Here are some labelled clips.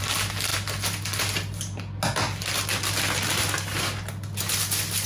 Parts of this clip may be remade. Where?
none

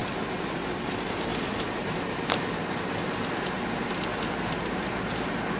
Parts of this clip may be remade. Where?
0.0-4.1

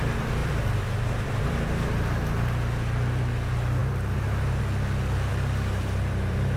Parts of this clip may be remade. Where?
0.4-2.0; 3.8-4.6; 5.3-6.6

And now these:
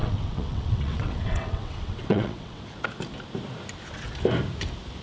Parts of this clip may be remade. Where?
0.0-2.6

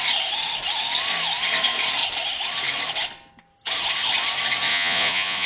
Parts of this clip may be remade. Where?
4.7-5.5

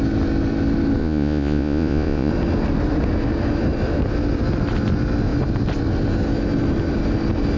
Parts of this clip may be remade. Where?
1.0-2.3

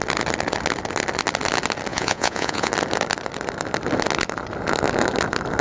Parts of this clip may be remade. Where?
1.9-2.7

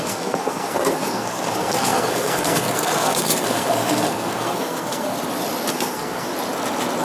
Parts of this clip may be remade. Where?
0.0-5.1; 5.7-6.3